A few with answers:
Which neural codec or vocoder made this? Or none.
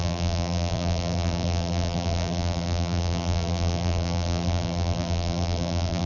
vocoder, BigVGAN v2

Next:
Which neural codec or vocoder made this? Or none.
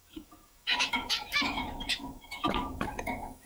autoencoder, DAC-VAE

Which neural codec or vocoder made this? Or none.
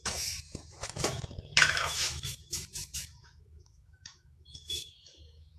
autoencoder, DAC-VAE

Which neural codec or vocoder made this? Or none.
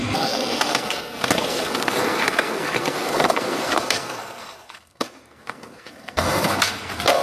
codec, SNAC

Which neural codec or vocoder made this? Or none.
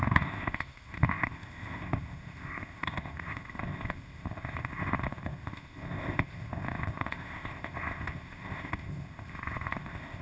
codec, ZipCodec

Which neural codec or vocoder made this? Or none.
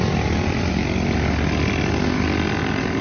none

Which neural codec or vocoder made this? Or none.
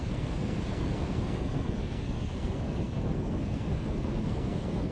codec, SNAC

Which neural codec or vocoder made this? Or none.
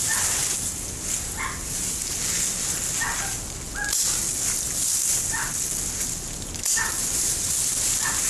none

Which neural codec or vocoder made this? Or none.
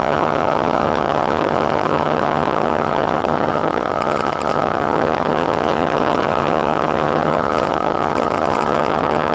vocoder, HiFi-GAN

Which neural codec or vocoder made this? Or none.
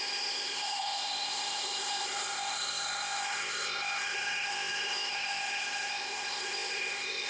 codec, ZipCodec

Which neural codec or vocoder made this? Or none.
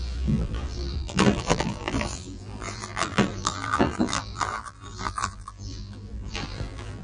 vocoder, BigVGAN v2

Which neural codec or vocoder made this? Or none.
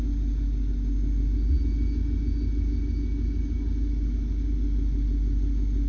none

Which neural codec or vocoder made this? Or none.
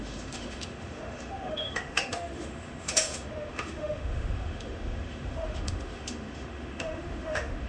autoencoder, DAC-VAE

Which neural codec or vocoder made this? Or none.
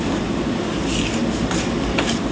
none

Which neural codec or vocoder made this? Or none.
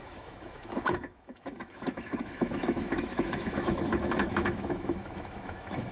autoencoder, DAC-VAE